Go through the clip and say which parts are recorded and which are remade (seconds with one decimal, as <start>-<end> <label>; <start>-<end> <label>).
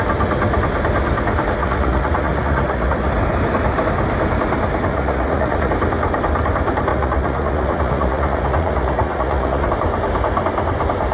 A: 0.0-1.6 recorded; 1.6-3.1 remade; 3.1-4.9 recorded; 4.9-5.7 remade; 5.7-6.9 recorded; 6.9-9.7 remade; 9.7-11.1 recorded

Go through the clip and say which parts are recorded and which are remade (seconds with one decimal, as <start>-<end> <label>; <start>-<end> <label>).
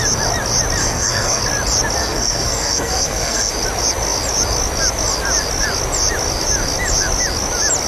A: 0.0-0.8 recorded; 0.8-1.4 remade; 1.4-2.0 recorded; 2.0-3.5 remade; 3.5-7.9 recorded